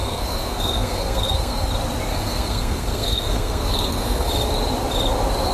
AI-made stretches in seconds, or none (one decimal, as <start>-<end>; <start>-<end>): 0.0-1.7; 2.1-4.3